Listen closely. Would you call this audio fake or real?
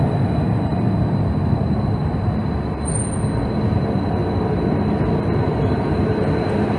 real